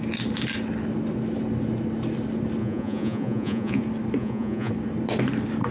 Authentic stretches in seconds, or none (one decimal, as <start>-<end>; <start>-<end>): 0.0-2.6; 3.8-4.2; 4.7-5.7